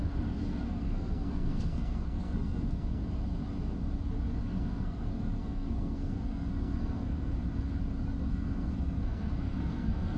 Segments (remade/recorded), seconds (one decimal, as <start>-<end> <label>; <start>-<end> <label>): 0.0-3.0 remade; 3.0-4.4 recorded; 4.4-7.4 remade; 7.4-8.3 recorded; 8.3-10.2 remade